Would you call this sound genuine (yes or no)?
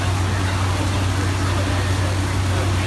yes